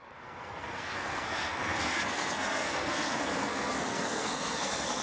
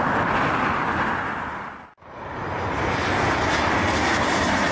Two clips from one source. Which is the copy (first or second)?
first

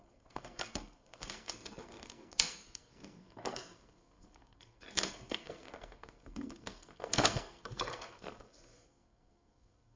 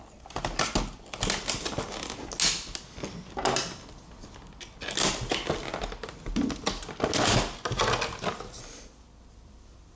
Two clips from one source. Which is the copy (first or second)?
first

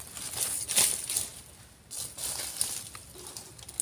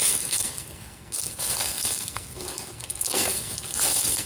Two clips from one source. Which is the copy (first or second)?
second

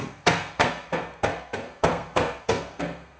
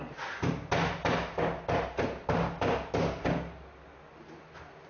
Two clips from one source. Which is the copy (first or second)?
first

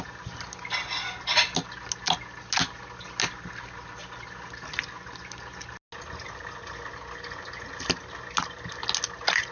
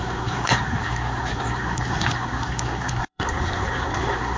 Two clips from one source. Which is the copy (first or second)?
second